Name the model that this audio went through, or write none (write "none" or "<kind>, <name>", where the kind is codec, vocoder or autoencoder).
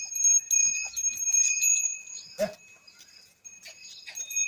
none